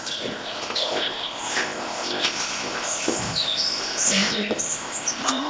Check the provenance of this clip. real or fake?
fake